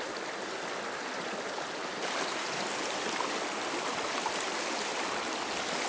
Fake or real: real